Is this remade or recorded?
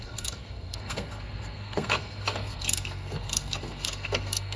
remade